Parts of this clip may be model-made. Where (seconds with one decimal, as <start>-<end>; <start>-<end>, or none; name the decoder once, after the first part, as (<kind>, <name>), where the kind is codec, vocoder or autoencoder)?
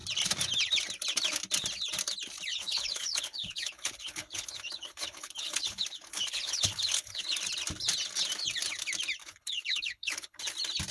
2.5-7.2 (codec, HILCodec); 9.2-10.5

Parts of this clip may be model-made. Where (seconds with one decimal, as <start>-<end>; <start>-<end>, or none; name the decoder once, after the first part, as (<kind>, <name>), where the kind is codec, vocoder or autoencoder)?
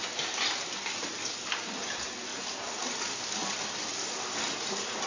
2.3-2.8 (vocoder, BigVGAN v2); 3.4-5.1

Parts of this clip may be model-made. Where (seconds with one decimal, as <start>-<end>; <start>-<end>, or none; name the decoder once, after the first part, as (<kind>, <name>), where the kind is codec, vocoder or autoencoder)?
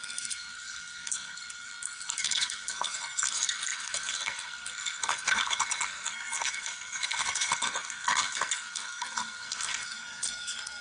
0.0-10.8 (codec, SNAC)